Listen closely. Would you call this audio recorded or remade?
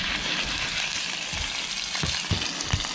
recorded